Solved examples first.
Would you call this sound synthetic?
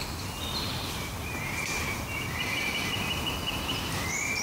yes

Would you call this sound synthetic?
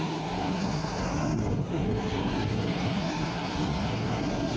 yes